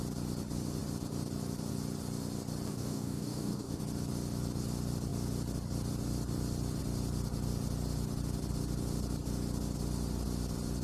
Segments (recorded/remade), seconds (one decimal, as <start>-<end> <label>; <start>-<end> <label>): 0.0-2.7 recorded; 2.7-3.8 remade; 3.8-10.8 recorded